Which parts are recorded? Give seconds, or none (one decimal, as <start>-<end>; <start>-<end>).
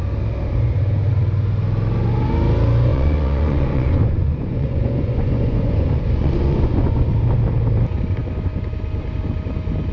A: 0.0-2.9; 7.1-9.9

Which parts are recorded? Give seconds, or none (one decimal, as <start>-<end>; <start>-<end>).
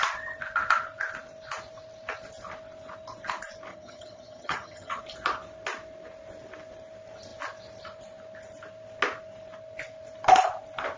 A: 0.0-3.7; 5.0-11.0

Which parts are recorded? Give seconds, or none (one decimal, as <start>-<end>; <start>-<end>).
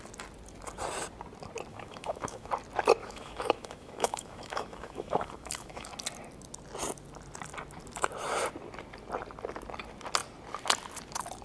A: 0.0-1.7; 2.5-3.0; 5.9-11.4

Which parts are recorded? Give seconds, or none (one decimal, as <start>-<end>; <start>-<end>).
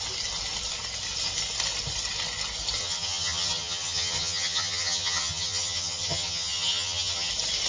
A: 0.0-2.8; 7.3-7.7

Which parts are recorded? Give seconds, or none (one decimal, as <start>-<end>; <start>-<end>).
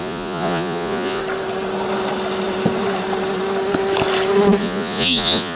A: 1.2-4.6